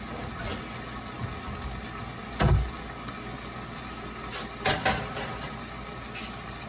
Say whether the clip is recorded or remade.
recorded